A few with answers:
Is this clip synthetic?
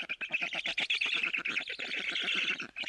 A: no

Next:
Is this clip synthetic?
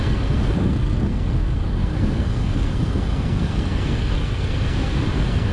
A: yes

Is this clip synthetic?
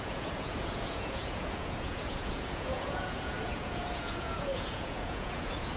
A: yes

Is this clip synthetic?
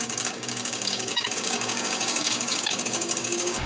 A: yes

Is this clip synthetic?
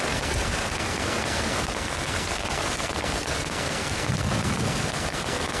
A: yes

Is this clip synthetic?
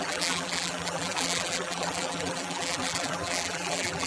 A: yes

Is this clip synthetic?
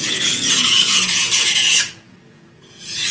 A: yes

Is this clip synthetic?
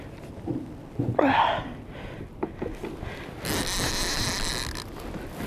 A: no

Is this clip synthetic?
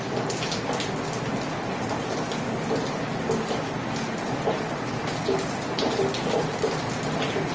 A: no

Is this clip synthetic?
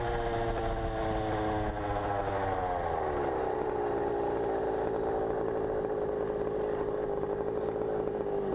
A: no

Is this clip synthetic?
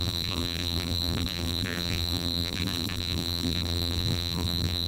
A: yes